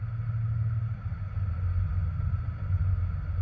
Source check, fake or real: real